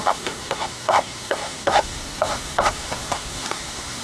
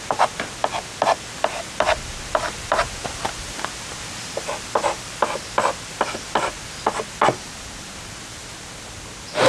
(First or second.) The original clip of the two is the second